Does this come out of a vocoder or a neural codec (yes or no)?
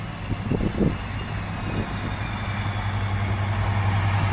no